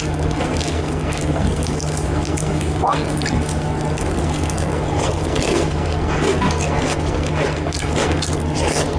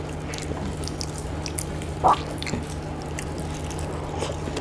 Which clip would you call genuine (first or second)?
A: second